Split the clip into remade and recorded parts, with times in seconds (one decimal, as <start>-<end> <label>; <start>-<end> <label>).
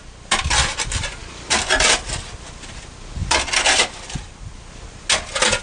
0.0-3.2 recorded; 3.2-4.3 remade; 4.3-5.6 recorded